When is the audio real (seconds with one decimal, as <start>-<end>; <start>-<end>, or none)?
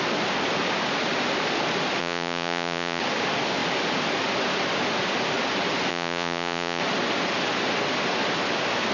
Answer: 0.0-2.0; 3.0-5.9; 6.8-8.9